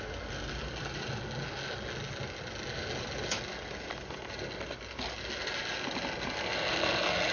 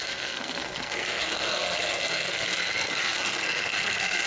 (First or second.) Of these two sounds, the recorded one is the first